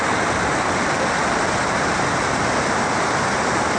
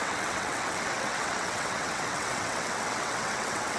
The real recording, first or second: first